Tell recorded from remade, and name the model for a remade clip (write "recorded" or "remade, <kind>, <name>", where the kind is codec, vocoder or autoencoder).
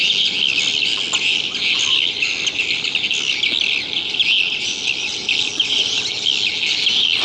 recorded